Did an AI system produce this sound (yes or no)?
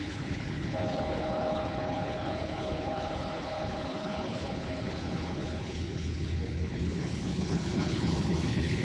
yes